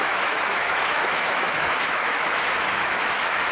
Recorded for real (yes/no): no